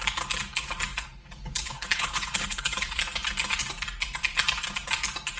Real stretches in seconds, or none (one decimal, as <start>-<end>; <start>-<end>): 0.0-0.9; 3.0-5.4